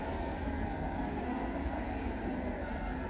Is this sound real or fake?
fake